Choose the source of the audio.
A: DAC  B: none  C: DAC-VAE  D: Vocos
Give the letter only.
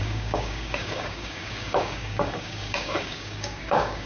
A